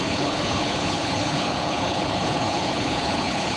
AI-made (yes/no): yes